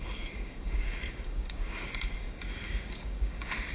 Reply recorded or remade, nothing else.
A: remade